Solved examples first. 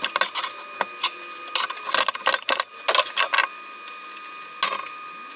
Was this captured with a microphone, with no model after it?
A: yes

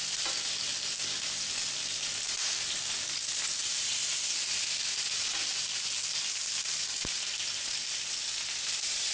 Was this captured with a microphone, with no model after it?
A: yes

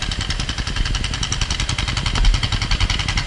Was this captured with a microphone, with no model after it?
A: yes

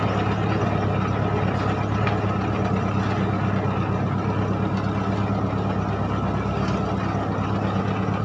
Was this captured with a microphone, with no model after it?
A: yes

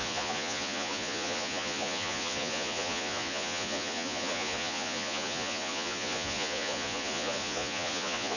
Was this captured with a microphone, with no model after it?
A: no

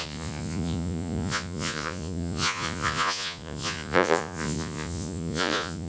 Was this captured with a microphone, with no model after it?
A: no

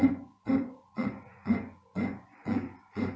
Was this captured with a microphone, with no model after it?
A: no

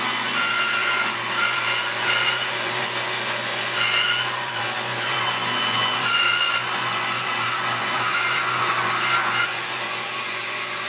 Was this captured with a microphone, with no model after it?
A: no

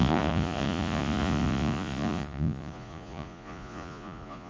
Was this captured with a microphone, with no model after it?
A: no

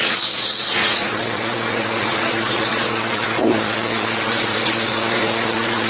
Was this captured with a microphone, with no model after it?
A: no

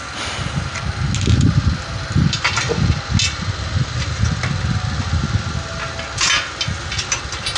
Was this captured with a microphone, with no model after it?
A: yes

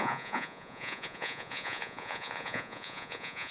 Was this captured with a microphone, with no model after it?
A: no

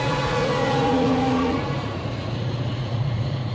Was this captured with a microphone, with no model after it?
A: no